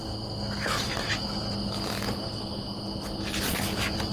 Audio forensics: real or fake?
real